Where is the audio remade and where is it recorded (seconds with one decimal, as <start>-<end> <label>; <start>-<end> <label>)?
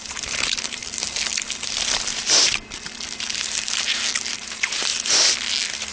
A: 0.0-0.8 remade; 0.8-4.3 recorded; 4.3-4.9 remade; 4.9-5.9 recorded